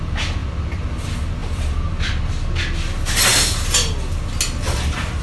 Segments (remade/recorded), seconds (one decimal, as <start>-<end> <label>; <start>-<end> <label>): 0.0-5.2 recorded